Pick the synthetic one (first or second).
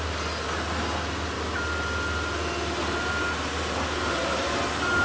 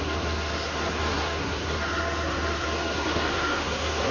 second